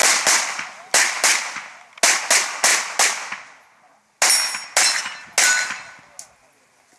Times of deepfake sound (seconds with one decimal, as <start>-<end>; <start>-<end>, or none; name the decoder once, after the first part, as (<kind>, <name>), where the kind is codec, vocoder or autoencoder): none

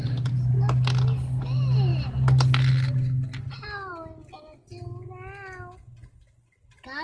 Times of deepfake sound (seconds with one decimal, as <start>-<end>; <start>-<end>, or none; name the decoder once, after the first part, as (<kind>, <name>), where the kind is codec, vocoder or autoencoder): none

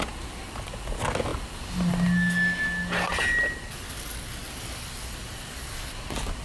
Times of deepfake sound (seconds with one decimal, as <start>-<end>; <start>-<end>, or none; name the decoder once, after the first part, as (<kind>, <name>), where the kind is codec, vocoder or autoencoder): none

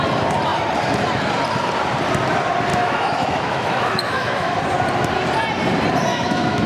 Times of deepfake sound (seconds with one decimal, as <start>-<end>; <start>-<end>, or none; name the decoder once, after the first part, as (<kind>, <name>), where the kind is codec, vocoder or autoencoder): 2.7-4.6 (autoencoder, DAC-VAE); 6.1-6.7

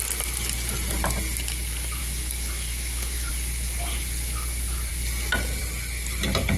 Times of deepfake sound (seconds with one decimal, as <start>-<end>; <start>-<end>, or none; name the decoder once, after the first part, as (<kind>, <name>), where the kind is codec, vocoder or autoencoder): 2.0-3.3 (autoencoder, DAC-VAE)

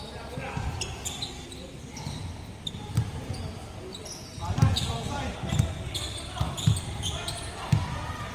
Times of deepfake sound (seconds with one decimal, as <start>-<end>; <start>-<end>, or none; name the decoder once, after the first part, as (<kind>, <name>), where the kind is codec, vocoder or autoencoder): none

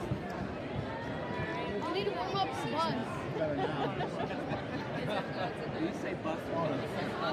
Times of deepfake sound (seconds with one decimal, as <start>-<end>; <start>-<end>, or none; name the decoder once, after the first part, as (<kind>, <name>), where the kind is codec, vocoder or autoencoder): none

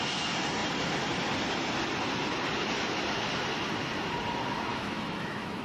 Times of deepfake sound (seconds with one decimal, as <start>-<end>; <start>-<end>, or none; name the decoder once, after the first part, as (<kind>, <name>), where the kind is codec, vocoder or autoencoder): 4.7-5.6 (autoencoder, DAC-VAE)